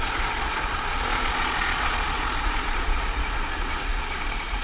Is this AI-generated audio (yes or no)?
yes